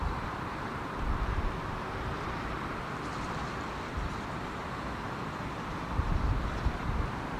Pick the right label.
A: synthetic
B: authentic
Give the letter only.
A